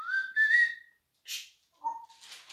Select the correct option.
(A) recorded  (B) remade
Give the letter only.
A